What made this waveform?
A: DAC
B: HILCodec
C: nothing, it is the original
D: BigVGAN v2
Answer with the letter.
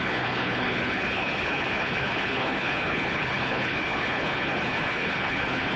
B